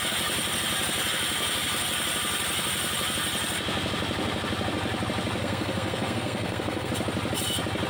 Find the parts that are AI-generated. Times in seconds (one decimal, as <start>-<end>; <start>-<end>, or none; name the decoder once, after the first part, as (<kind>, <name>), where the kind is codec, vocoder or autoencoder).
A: 5.4-6.9 (codec, SNAC)